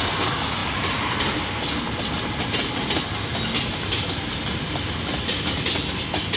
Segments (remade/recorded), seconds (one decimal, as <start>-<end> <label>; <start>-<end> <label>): 0.0-6.4 recorded